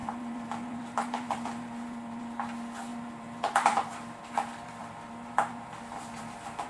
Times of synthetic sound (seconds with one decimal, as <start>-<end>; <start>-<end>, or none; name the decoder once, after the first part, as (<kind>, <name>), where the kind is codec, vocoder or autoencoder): 0.0-2.2 (vocoder, BigVGAN v2); 2.9-6.7